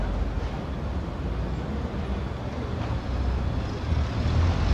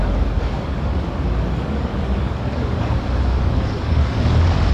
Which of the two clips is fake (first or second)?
second